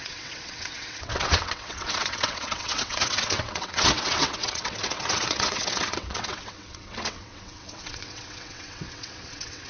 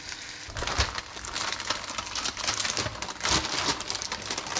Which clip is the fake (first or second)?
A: first